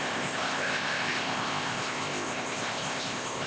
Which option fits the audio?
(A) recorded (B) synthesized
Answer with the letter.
B